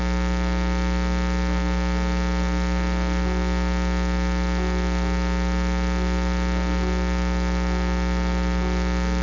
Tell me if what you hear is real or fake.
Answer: real